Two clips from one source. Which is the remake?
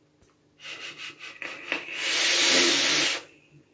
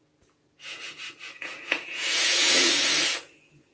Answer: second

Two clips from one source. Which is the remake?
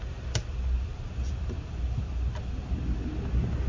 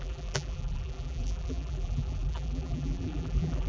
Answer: second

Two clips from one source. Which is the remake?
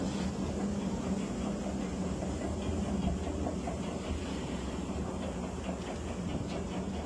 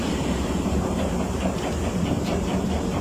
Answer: second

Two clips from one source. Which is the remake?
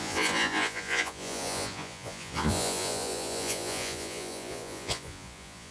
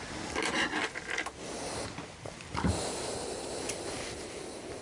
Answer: first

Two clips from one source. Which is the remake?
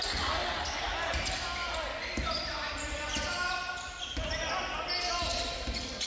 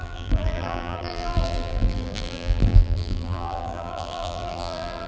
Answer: second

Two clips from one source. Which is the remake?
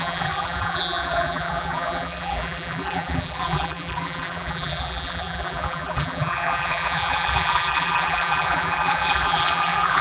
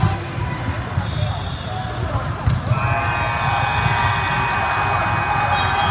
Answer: first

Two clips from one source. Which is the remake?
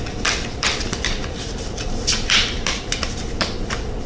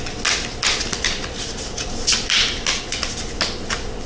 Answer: first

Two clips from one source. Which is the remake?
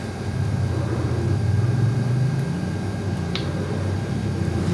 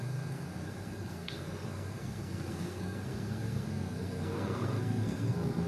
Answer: second